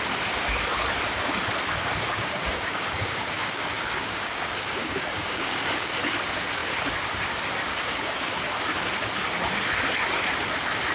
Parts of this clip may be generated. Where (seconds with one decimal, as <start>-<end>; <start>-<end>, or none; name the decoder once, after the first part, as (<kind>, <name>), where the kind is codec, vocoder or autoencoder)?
2.1-6.0 (codec, DAC); 7.7-8.3